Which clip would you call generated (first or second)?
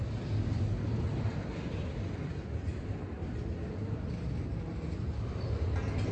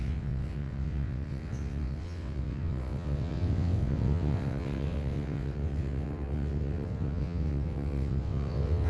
second